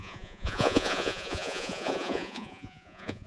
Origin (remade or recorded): remade